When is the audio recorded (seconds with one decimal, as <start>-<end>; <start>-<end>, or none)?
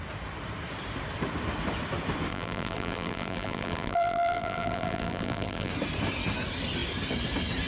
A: 0.0-2.3; 5.7-7.7